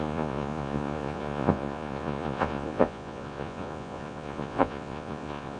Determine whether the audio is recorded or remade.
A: remade